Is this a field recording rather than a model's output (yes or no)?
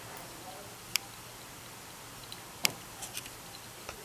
no